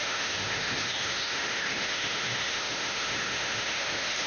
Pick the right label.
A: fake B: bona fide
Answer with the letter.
A